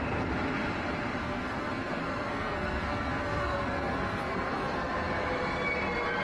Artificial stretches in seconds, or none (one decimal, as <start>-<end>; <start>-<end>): 1.2-4.9